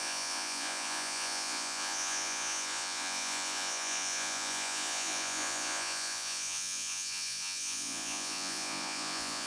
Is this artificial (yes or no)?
yes